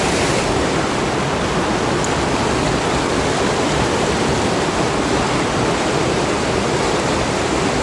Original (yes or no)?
yes